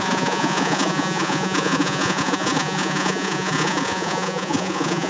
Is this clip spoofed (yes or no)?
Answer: yes